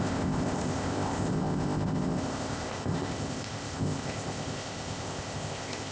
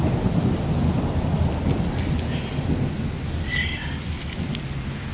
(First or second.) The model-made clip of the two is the first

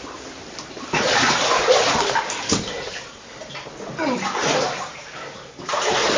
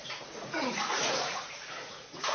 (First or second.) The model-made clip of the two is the second